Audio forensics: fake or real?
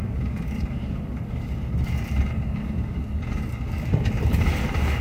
fake